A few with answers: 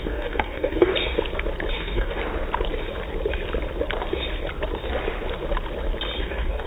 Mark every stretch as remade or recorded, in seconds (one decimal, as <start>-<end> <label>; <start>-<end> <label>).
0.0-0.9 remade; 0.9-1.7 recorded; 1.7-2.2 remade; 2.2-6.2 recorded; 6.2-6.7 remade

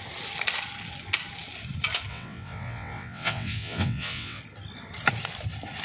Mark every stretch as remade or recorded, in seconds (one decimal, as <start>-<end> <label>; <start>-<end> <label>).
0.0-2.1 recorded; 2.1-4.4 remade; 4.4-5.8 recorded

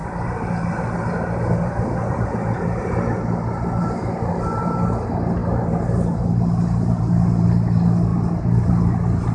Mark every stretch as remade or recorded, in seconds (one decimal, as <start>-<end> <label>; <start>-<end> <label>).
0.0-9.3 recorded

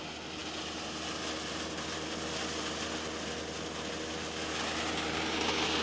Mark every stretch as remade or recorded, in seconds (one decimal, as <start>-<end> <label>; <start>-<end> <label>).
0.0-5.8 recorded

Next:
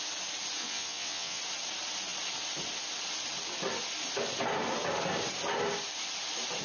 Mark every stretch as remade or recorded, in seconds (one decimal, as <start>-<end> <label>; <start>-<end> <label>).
0.0-0.6 recorded; 0.6-1.4 remade; 1.4-6.6 recorded

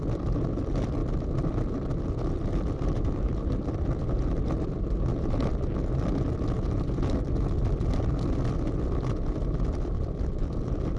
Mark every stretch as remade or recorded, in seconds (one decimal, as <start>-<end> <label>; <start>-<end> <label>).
0.0-11.0 recorded